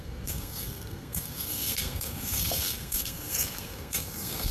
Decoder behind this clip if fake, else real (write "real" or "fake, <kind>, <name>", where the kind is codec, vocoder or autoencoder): fake, codec, SNAC